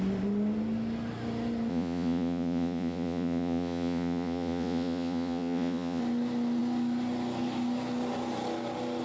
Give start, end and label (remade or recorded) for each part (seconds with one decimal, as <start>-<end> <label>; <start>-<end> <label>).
0.0-1.7 recorded; 1.7-6.0 remade; 6.0-9.0 recorded

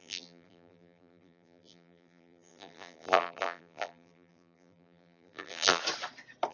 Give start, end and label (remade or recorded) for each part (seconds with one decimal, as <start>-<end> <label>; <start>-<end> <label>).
0.0-5.8 remade; 5.8-6.5 recorded

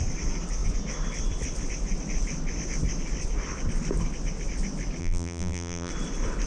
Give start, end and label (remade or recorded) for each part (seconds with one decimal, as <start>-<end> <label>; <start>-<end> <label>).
0.0-5.0 recorded; 5.0-5.9 remade; 5.9-6.5 recorded